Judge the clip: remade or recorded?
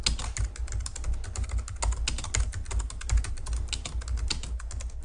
recorded